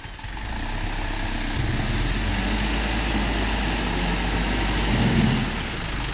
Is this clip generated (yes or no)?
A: no